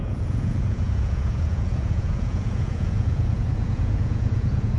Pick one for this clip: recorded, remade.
remade